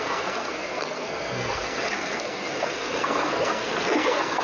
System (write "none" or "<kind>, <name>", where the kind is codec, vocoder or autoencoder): codec, SNAC